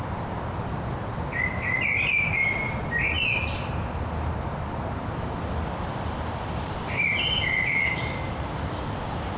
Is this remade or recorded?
remade